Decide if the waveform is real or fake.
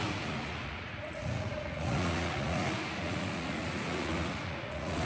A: fake